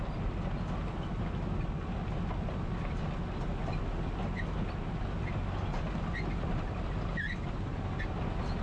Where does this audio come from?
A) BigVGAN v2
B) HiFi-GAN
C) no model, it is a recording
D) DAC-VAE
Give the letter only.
C